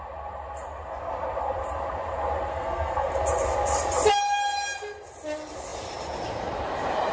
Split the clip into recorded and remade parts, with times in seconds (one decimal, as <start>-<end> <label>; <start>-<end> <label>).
0.0-2.5 recorded; 2.5-3.1 remade; 3.1-7.1 recorded